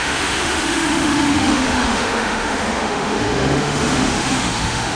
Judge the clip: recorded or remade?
remade